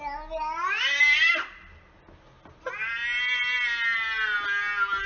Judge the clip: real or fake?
real